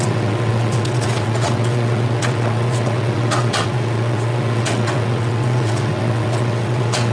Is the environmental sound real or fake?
fake